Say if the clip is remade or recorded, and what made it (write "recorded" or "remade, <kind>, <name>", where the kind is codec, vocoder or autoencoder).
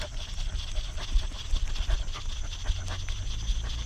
recorded